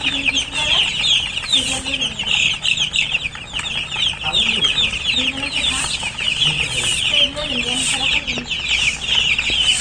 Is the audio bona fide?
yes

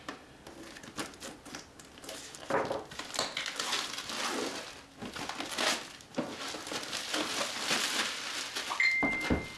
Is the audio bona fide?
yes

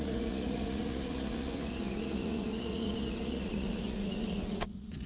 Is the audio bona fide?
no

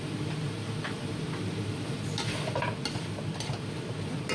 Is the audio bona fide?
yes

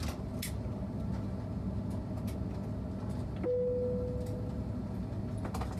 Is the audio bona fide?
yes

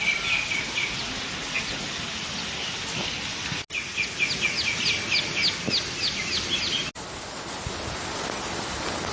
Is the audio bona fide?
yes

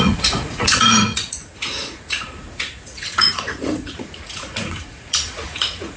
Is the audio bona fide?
no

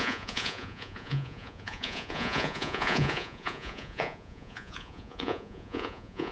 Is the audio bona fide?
no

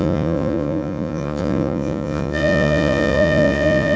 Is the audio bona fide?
no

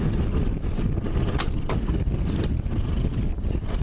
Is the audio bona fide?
yes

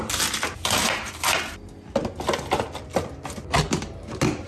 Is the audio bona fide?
yes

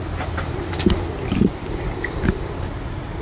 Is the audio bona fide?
yes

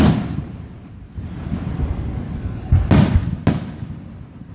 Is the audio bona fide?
yes